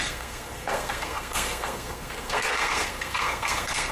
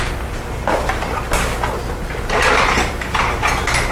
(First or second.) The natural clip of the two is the second